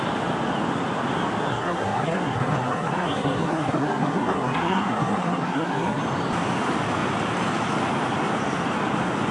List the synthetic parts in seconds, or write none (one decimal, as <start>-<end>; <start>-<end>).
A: 1.5-6.0